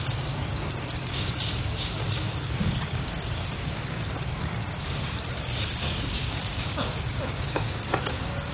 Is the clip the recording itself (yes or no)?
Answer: no